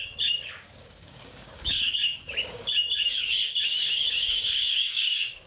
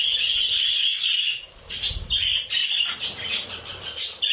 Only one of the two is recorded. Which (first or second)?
second